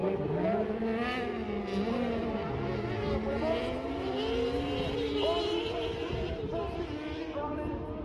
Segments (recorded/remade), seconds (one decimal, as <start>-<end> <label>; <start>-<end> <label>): 0.0-8.0 recorded